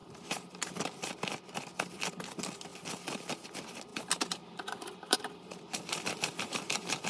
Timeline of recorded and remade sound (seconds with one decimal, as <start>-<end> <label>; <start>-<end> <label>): 0.0-0.8 remade; 0.8-3.9 recorded; 3.9-7.1 remade